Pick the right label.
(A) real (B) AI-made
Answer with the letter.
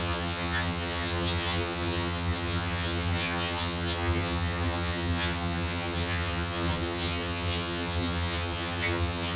B